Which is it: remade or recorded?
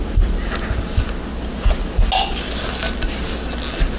recorded